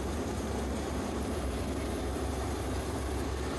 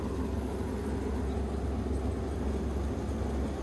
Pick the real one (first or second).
second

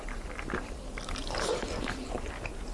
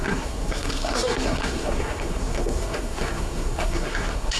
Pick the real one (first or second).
first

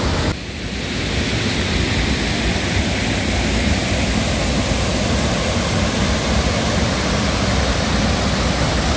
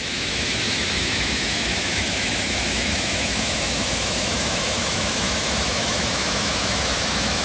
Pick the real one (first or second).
first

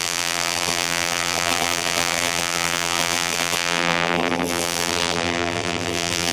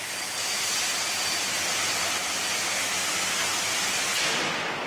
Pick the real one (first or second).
second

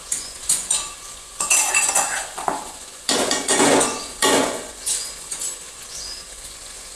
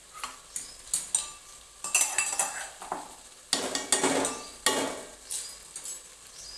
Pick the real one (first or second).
second